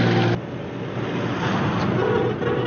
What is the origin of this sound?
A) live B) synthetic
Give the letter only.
A